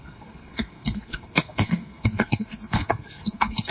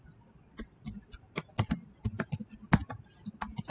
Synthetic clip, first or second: first